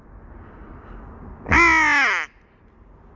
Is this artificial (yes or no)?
no